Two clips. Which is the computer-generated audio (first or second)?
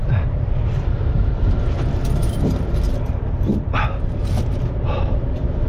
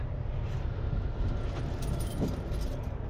first